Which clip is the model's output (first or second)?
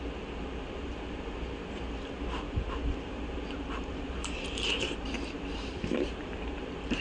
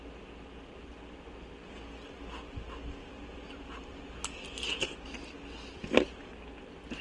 first